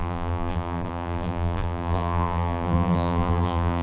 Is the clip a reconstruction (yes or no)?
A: yes